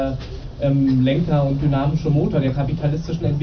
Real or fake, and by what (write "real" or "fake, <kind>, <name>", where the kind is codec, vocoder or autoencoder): real